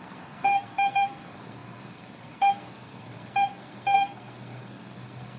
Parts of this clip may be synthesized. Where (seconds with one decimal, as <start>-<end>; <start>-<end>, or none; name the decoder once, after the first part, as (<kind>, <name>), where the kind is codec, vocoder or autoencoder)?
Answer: 0.0-5.4 (codec, SNAC)